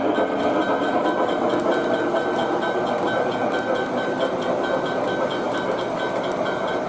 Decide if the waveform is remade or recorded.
recorded